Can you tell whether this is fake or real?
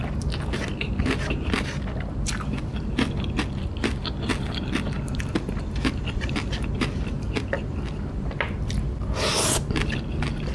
real